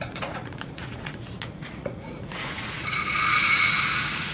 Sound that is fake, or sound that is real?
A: fake